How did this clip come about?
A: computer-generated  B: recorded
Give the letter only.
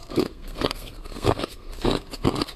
A